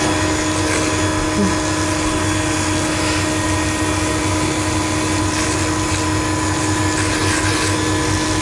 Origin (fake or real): real